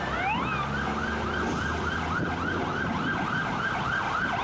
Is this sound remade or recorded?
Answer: recorded